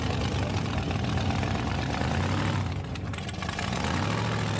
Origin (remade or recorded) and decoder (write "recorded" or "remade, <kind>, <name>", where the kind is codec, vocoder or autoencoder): recorded